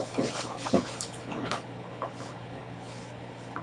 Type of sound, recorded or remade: remade